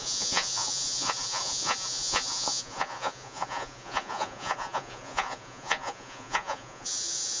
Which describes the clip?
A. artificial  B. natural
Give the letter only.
A